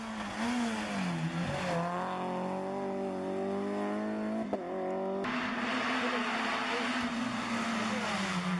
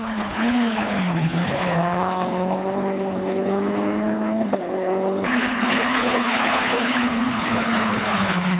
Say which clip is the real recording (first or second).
first